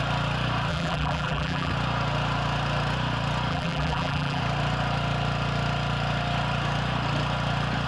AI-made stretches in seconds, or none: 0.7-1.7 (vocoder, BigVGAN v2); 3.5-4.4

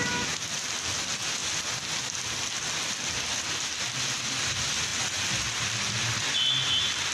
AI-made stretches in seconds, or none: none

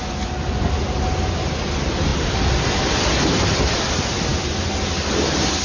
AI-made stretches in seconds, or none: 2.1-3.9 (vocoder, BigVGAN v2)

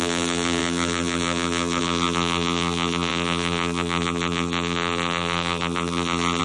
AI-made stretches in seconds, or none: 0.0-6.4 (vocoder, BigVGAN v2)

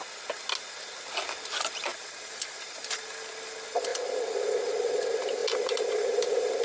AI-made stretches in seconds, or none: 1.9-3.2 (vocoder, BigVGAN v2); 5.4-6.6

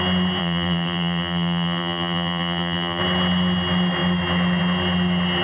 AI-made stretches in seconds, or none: 0.4-3.0 (vocoder, BigVGAN v2)

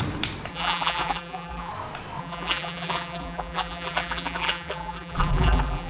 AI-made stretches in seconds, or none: 0.5-1.7 (vocoder, BigVGAN v2); 2.2-5.9